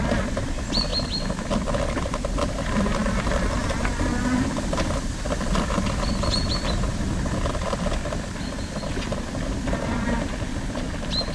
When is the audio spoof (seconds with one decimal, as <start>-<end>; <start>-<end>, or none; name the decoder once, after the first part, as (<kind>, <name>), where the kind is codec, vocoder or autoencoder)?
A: none